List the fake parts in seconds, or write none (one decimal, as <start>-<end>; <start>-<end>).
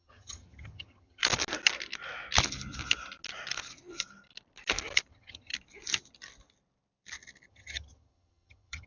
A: 0.0-1.2; 5.1-5.5; 7.5-8.9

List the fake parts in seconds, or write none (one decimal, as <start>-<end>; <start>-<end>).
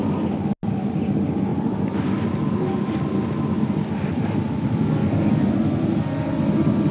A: none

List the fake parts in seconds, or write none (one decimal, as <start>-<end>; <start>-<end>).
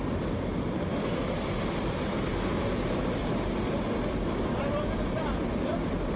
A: none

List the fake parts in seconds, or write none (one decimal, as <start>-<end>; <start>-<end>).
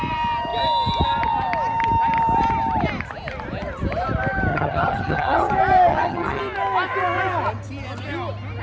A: 4.5-5.5; 5.9-6.4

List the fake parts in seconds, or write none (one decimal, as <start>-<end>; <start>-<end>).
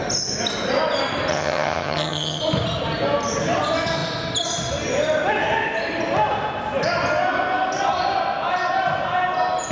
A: 1.3-2.4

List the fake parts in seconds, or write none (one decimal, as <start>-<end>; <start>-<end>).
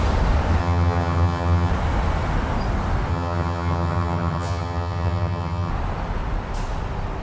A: 0.6-1.7; 3.1-5.7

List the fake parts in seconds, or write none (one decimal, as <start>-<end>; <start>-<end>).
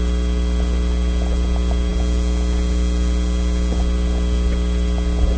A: none